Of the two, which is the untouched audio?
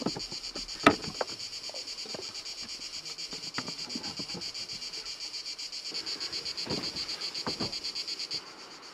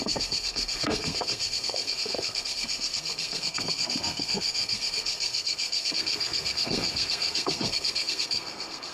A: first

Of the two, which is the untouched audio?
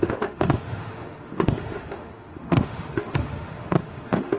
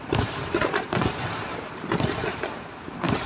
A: second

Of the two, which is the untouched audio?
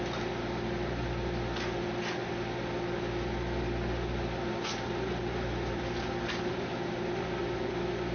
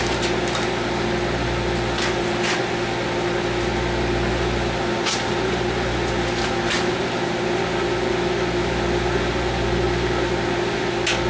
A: second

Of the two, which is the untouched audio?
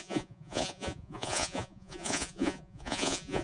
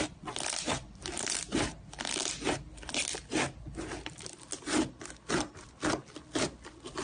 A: second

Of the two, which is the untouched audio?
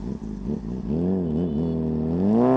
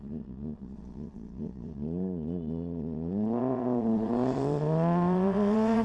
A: first